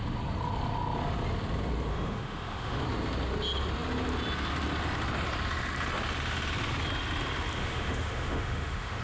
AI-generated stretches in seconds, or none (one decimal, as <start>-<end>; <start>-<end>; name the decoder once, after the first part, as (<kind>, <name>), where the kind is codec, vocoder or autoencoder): 1.9-2.8 (autoencoder, DAC-VAE); 7.6-9.0